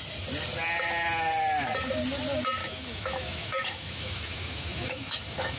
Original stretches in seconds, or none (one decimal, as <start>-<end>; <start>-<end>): 0.0-2.6